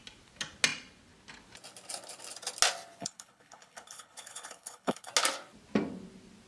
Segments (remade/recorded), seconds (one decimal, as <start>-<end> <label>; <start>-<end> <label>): 0.0-3.0 recorded; 3.0-5.1 remade; 5.1-6.5 recorded